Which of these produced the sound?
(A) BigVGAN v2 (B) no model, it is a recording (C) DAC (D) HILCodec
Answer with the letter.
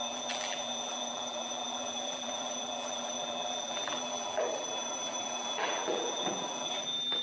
A